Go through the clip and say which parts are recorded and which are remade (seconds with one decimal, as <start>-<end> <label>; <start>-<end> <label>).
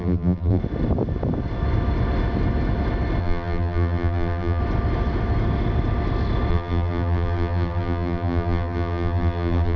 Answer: 0.0-0.6 remade; 0.6-3.2 recorded; 3.2-4.6 remade; 4.6-6.5 recorded; 6.5-9.8 remade